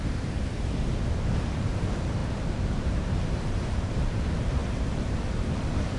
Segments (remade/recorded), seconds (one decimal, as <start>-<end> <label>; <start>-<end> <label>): 0.0-6.0 remade